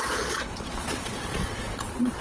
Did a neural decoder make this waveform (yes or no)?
yes